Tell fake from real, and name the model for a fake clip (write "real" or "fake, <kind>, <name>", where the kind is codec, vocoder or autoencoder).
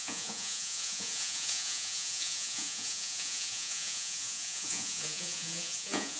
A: fake, vocoder, Vocos